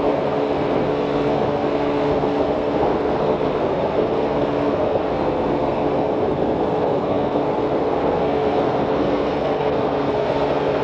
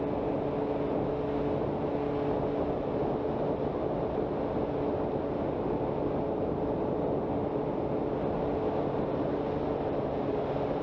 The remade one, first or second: first